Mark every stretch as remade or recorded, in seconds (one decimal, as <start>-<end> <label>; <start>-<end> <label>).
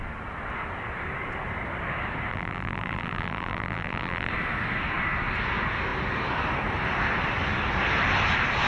0.0-2.3 recorded; 2.3-4.3 remade; 4.3-8.7 recorded